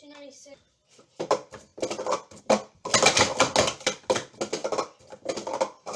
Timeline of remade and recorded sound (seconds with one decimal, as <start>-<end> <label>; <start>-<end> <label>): 0.0-6.0 recorded